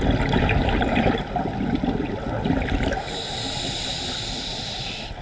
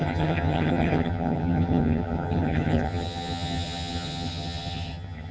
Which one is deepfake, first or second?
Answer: second